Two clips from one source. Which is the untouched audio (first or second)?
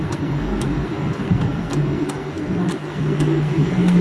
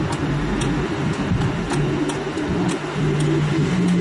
second